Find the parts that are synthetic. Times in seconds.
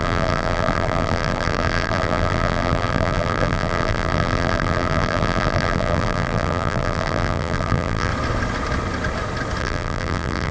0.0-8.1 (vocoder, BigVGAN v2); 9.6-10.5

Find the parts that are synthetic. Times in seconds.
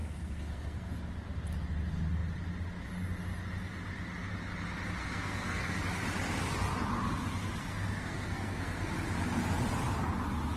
0.0-0.9 (codec, SNAC); 5.0-5.8; 7.6-8.9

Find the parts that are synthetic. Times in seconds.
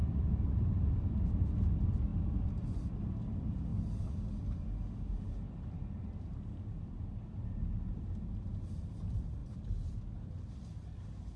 none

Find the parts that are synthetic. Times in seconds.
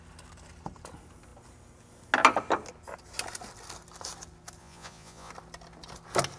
4.6-5.3 (vocoder, Vocos)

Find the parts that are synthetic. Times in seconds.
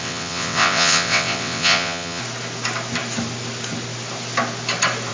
0.0-2.2 (vocoder, WaveNeXt)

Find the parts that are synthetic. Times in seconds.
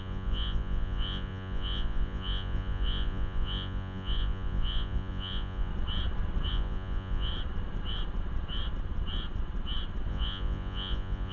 0.0-5.7 (vocoder, Vocos); 6.5-7.3; 10.1-11.3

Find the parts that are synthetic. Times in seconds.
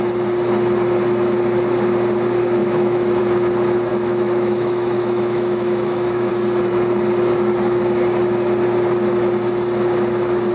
2.6-3.2 (autoencoder, DAC-VAE); 3.9-6.3